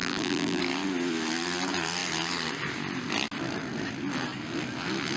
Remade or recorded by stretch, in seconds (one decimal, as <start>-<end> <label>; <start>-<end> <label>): 0.0-0.6 remade; 0.6-5.2 recorded